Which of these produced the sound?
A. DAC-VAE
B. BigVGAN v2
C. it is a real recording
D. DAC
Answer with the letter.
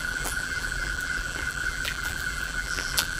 B